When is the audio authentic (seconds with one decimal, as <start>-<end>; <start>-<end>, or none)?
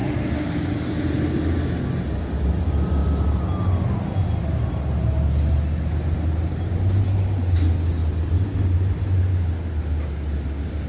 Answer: 0.0-10.9